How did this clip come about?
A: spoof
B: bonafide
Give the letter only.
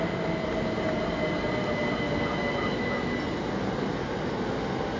B